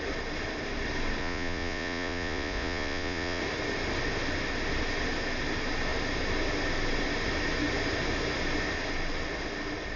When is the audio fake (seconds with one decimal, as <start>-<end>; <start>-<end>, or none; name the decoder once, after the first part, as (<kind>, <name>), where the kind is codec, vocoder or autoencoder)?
1.2-3.4 (vocoder, Vocos)